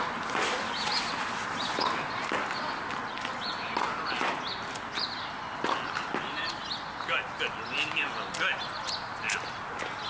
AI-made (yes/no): no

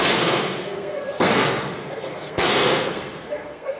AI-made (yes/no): yes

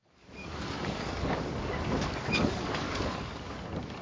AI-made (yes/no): yes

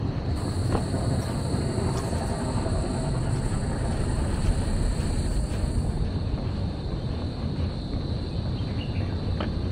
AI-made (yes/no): no